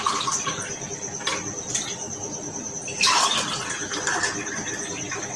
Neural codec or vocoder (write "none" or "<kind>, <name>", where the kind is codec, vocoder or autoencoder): none